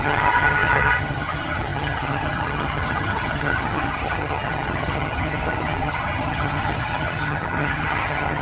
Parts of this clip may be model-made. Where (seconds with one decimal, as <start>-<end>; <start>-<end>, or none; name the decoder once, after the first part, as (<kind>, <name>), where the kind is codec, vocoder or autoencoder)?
0.0-8.4 (vocoder, HiFi-GAN)